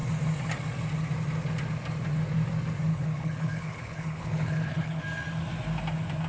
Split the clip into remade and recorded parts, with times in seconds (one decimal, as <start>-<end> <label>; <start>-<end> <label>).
0.0-2.9 recorded; 2.9-5.0 remade; 5.0-6.3 recorded